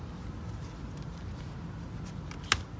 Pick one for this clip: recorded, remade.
recorded